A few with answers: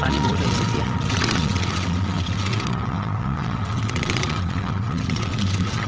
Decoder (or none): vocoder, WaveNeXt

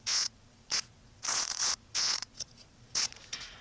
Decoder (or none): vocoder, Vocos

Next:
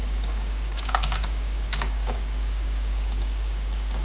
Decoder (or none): codec, DAC